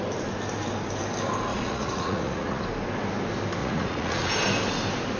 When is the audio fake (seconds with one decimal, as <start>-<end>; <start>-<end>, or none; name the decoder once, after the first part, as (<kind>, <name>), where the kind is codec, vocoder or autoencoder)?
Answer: 1.5-2.6 (vocoder, Vocos); 3.6-4.3